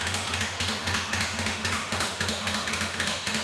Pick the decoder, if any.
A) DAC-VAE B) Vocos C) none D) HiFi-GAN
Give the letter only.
A